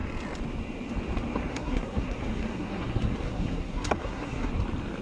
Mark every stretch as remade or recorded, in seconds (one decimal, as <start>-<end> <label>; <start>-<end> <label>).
0.0-1.5 recorded; 1.5-4.5 remade; 4.5-5.0 recorded